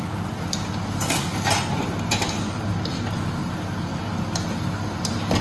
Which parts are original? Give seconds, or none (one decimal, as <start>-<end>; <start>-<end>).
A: 0.0-5.4